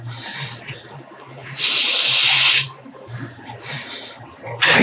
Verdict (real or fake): real